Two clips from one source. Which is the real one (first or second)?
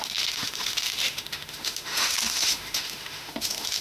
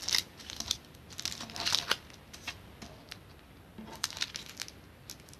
second